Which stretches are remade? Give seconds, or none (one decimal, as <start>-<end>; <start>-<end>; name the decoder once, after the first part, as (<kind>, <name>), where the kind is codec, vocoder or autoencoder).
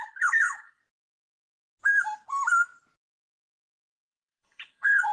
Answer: 0.0-0.8 (codec, HILCodec); 3.9-5.1